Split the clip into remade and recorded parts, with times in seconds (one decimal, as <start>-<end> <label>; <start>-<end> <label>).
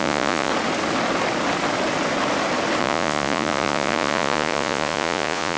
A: 0.0-0.5 remade; 0.5-2.8 recorded; 2.8-5.6 remade